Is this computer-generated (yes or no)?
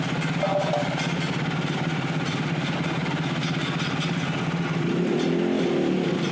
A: no